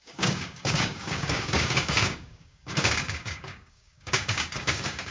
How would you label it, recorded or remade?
remade